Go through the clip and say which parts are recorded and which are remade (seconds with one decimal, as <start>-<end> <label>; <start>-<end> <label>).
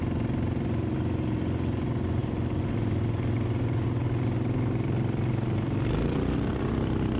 0.0-7.2 recorded